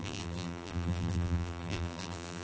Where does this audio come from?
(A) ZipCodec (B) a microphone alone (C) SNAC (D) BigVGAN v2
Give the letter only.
D